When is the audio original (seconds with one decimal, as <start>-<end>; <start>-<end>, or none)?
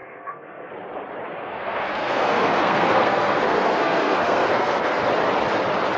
0.7-1.4; 5.0-6.0